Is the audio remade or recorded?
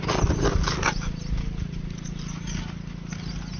recorded